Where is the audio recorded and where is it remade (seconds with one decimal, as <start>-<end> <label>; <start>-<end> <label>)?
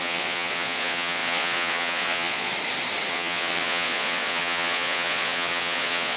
0.0-2.5 remade; 2.5-3.1 recorded; 3.1-6.2 remade